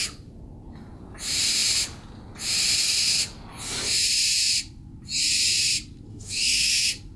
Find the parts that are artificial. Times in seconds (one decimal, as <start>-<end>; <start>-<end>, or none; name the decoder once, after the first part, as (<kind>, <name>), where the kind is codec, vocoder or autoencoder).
6.1-6.7 (autoencoder, DAC-VAE)